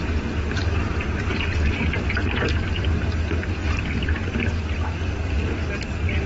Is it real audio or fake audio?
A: real